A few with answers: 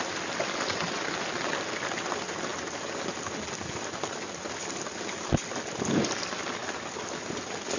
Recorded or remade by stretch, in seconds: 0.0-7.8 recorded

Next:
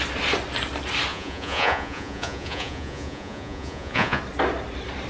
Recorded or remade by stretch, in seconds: 0.0-1.1 recorded; 1.1-4.2 remade; 4.2-5.1 recorded

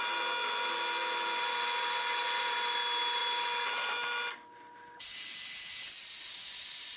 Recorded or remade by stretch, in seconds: 0.0-7.0 recorded